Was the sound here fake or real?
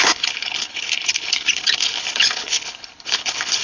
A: fake